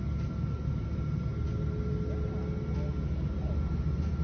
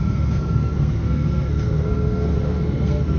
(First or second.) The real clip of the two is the first